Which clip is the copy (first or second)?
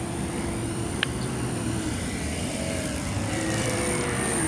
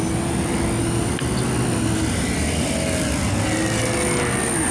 first